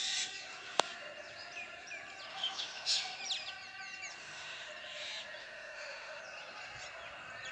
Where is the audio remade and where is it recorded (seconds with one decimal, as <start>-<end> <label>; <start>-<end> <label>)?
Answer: 0.0-2.3 recorded; 2.3-3.2 remade; 3.2-4.2 recorded; 4.2-4.7 remade; 4.7-5.4 recorded; 5.4-6.2 remade; 6.2-7.5 recorded